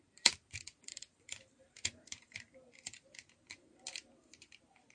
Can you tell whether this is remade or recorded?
remade